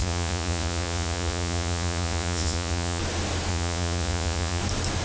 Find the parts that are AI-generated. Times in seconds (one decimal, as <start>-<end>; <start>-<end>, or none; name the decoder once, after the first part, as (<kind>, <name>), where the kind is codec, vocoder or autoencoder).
0.0-3.0 (vocoder, Vocos); 3.5-4.6

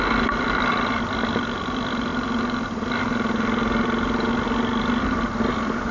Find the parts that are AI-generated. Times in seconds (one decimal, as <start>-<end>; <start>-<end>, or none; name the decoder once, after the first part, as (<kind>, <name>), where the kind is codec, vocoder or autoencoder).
none